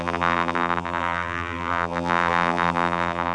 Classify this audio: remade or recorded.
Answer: remade